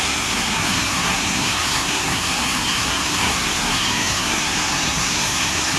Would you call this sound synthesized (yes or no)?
yes